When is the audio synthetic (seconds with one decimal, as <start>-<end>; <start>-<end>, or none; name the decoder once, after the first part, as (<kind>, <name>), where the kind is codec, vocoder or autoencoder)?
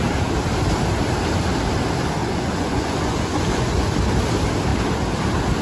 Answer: 2.2-3.9 (vocoder, Vocos)